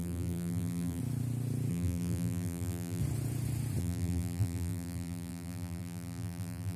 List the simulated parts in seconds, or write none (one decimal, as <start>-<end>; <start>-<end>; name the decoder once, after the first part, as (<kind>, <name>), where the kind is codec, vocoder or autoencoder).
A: 0.0-1.0 (vocoder, BigVGAN v2); 1.7-3.0; 3.8-6.8